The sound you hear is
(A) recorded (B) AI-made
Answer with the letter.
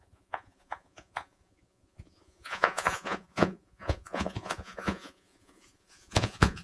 B